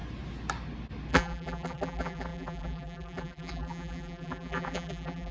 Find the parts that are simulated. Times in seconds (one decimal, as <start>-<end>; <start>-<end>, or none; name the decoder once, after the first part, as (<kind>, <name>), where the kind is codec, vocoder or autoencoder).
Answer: 1.1-5.3 (vocoder, BigVGAN v2)

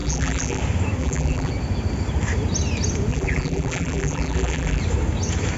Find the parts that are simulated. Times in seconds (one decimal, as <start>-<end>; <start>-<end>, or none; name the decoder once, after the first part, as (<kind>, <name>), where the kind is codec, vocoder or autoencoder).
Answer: 0.0-0.6 (vocoder, BigVGAN v2); 1.0-1.5; 3.1-4.8

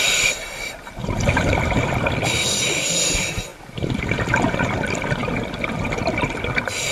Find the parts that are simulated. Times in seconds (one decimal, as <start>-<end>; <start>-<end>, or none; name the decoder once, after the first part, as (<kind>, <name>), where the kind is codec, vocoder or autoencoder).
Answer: 1.0-2.0 (vocoder, BigVGAN v2); 3.5-4.0

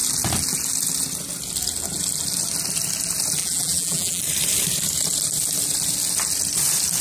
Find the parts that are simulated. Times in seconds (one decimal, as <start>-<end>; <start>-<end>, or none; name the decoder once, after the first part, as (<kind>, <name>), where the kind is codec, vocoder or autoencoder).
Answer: 3.4-4.2 (vocoder, BigVGAN v2)

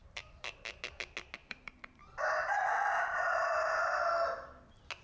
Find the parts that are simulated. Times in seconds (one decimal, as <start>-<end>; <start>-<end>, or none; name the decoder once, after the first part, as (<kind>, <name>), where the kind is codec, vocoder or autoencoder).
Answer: 0.0-0.7 (vocoder, BigVGAN v2); 1.4-2.0; 2.4-3.5

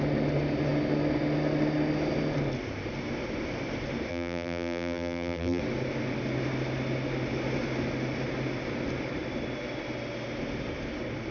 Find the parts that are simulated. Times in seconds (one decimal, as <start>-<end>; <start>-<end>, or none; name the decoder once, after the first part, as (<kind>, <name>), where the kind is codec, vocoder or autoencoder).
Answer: 4.1-5.6 (vocoder, BigVGAN v2)

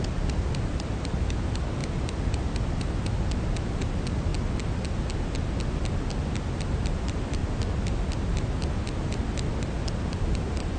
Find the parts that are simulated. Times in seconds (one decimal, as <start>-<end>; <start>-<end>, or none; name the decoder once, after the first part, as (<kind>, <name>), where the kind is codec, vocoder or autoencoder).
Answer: 0.0-4.3 (vocoder, BigVGAN v2); 6.9-7.4; 10.3-10.8